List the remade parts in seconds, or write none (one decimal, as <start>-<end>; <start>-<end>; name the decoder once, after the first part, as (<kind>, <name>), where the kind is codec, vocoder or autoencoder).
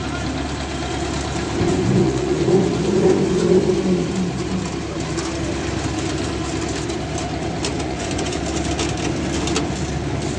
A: 1.7-2.7 (vocoder, Vocos); 7.7-8.4